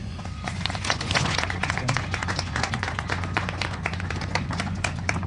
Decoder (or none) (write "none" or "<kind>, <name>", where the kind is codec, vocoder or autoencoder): vocoder, Vocos